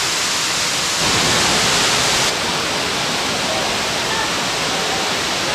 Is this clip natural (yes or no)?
yes